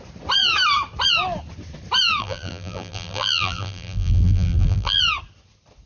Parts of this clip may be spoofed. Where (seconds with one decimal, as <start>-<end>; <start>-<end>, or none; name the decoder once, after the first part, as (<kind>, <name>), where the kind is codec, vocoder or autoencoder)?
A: 2.2-5.0 (vocoder, BigVGAN v2)